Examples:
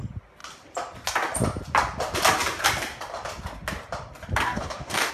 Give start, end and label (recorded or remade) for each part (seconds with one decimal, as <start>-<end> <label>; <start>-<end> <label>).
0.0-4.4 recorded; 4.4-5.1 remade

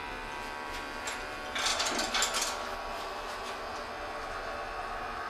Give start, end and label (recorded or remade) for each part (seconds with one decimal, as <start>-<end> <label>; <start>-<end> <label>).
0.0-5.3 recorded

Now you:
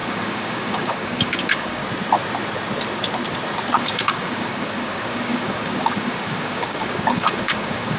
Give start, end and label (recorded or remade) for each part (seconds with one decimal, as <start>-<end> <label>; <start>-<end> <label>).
0.0-1.8 remade; 1.8-3.8 recorded; 3.8-8.0 remade